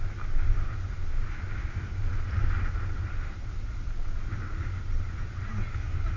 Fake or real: real